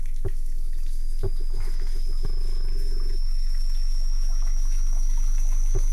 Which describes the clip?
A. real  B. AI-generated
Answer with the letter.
B